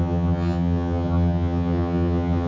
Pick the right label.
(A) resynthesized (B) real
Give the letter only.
A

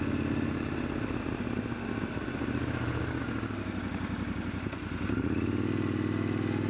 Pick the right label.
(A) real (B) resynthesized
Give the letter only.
A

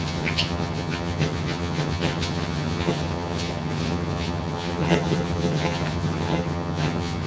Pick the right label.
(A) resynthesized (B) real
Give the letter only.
A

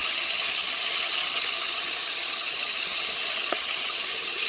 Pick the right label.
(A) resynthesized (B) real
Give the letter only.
A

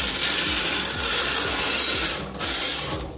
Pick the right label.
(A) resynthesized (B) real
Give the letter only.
B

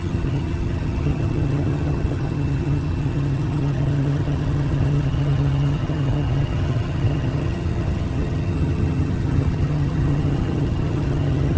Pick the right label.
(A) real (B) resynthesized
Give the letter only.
B